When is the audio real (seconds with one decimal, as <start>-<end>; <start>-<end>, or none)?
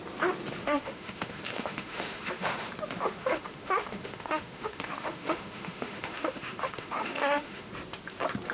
0.0-0.6; 2.7-3.2; 7.7-8.5